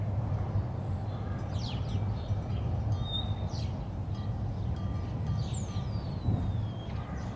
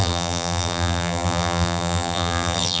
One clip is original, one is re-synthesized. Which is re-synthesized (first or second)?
second